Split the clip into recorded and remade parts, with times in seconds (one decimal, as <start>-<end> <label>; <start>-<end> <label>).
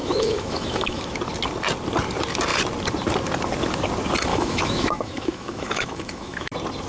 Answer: 0.0-1.2 remade; 1.2-4.3 recorded; 4.3-6.5 remade; 6.5-6.9 recorded